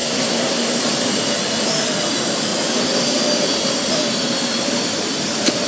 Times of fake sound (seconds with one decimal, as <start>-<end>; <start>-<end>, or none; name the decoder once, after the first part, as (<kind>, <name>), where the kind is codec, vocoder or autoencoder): 0.0-0.8 (codec, SNAC)